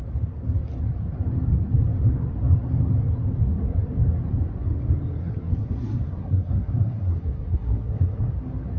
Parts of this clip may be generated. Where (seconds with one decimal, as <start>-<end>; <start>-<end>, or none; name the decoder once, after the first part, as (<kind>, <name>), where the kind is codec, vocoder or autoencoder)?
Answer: 5.2-8.3 (codec, SNAC)